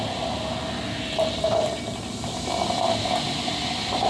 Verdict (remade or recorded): recorded